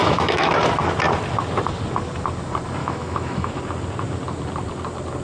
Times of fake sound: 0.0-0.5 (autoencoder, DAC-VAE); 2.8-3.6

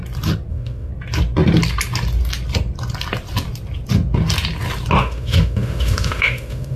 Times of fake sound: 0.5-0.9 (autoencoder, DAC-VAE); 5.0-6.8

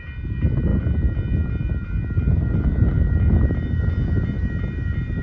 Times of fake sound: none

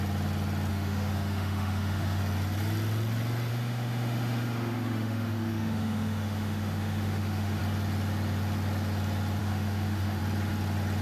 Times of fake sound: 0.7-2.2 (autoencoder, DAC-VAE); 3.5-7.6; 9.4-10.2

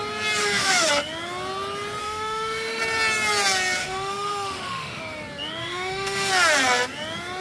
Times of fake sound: 0.4-0.9 (autoencoder, DAC-VAE); 2.0-2.8; 3.8-5.0; 5.6-6.3

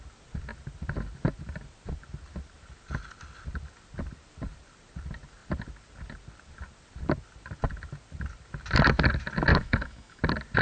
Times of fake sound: 9.5-10.2 (autoencoder, DAC-VAE)

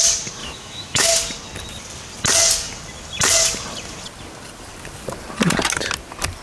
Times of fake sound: 0.4-1.1 (autoencoder, DAC-VAE)